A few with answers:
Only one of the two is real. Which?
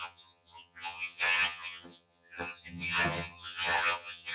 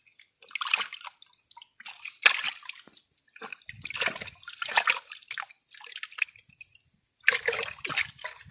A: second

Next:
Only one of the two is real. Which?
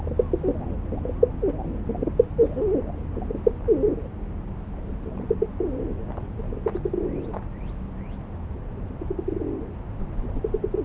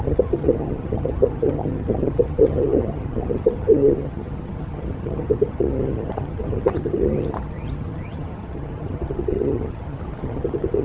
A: first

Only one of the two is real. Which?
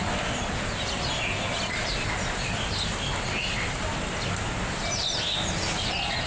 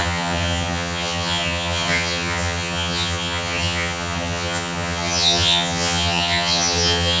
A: first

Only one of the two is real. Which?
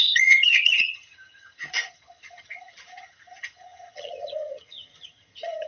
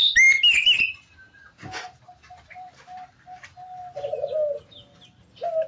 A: second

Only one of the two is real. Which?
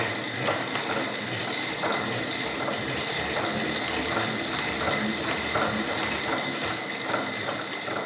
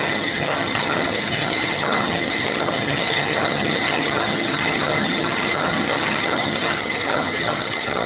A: first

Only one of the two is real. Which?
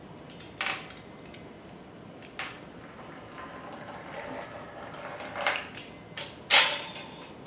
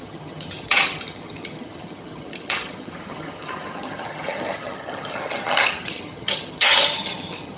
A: first